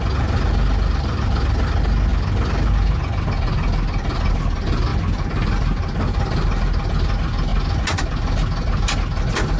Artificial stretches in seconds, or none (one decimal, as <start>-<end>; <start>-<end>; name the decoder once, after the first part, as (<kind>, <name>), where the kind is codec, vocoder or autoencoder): none